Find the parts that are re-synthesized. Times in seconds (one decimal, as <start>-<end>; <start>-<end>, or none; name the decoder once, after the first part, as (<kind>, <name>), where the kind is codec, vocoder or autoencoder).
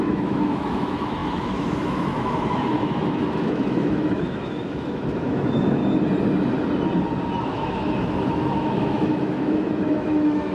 0.0-5.8 (autoencoder, DAC-VAE); 7.4-10.5